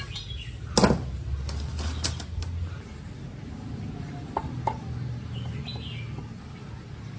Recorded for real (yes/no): yes